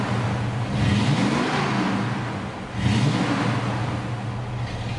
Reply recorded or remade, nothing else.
recorded